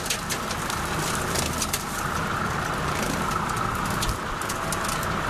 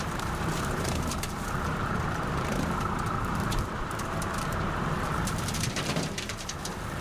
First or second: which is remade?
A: second